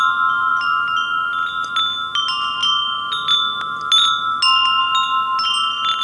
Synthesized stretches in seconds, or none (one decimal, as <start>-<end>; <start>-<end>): none